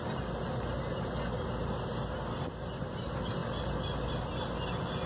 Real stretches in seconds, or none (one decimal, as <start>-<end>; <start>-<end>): 0.0-5.1